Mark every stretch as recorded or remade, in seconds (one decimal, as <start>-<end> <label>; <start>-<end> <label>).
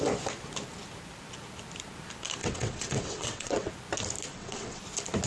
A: 0.0-2.4 recorded; 2.4-3.7 remade; 3.7-4.3 recorded; 4.3-4.8 remade; 4.8-5.3 recorded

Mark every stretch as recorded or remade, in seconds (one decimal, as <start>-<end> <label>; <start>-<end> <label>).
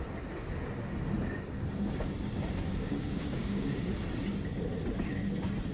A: 0.0-2.7 recorded; 2.7-3.7 remade; 3.7-5.7 recorded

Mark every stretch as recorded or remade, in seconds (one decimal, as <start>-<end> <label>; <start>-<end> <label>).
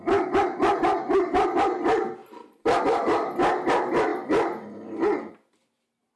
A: 0.0-2.2 recorded; 2.2-2.8 remade; 2.8-6.2 recorded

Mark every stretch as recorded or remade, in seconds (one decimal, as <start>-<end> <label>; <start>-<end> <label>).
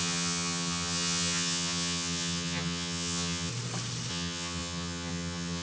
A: 0.0-3.5 remade; 3.5-4.1 recorded; 4.1-5.6 remade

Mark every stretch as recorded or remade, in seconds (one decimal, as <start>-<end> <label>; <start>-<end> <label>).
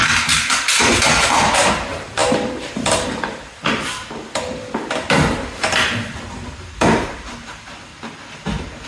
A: 0.0-7.9 remade; 7.9-8.9 recorded